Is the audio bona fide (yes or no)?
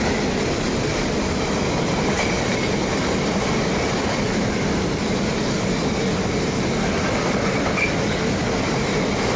yes